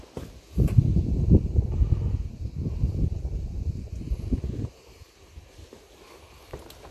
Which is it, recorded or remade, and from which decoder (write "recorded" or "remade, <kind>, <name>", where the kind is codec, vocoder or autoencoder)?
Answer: recorded